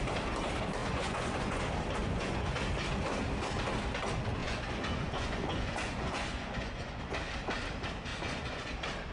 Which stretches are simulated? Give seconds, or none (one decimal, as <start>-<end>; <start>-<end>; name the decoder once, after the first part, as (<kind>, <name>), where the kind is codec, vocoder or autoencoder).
0.8-1.6 (vocoder, Vocos); 2.0-2.6; 4.4-7.0; 8.1-8.7